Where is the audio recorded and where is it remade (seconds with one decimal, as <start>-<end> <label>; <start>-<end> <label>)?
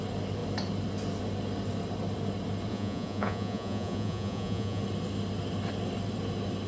0.0-2.7 recorded; 2.7-4.8 remade; 4.8-6.7 recorded